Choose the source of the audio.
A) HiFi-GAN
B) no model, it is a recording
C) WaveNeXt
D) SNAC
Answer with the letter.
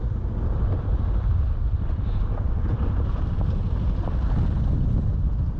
B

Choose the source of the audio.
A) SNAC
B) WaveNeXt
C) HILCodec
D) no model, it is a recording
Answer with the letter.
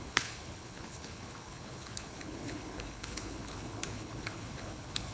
C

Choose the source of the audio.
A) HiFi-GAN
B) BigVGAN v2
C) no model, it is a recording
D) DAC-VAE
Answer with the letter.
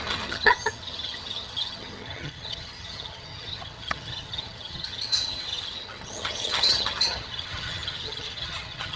A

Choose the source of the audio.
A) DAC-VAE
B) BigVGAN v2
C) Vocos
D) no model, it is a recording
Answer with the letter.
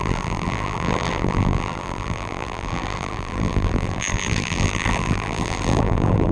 B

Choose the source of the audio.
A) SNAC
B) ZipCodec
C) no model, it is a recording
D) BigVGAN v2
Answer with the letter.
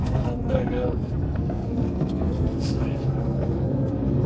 A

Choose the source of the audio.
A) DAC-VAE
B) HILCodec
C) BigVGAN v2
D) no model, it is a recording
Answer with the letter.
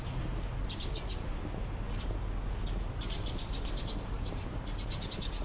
D